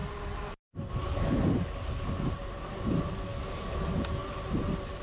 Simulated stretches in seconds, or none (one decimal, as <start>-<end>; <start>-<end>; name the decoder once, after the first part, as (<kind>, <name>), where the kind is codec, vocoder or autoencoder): none